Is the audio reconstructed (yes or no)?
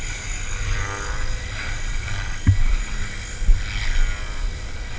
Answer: no